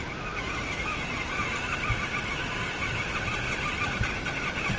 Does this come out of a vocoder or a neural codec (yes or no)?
no